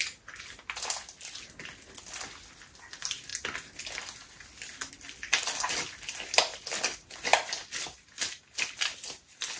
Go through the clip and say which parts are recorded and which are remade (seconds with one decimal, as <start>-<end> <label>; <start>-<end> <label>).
0.0-9.6 recorded